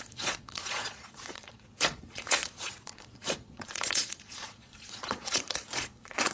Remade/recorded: remade